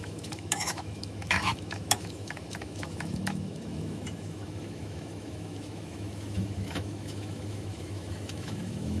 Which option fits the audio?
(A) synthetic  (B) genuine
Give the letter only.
A